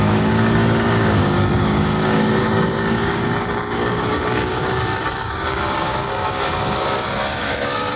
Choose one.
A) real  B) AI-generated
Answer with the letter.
B